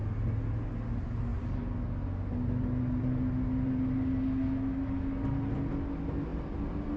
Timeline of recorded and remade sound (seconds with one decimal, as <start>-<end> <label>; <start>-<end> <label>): 0.0-7.0 recorded